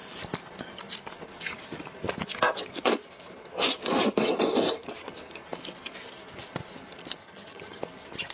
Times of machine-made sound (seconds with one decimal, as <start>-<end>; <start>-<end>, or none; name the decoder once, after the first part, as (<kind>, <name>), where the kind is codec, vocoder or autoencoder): 7.2-7.8 (vocoder, HiFi-GAN)